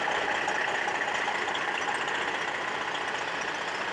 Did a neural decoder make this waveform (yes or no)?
no